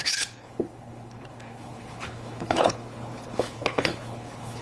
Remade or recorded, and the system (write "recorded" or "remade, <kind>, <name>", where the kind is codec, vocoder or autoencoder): remade, codec, HILCodec